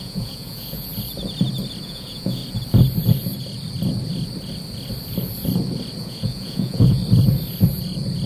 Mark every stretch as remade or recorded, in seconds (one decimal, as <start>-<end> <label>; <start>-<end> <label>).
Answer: 0.0-0.9 remade; 0.9-1.8 recorded; 1.8-2.4 remade; 2.4-6.0 recorded; 6.0-7.0 remade; 7.0-8.3 recorded